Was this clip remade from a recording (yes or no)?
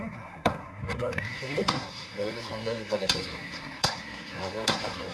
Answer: yes